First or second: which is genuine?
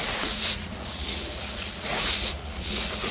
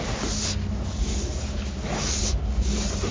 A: second